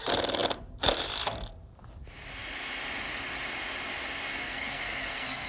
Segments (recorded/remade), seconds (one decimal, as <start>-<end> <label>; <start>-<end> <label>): 0.0-4.3 recorded; 4.3-5.5 remade